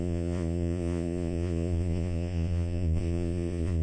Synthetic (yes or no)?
yes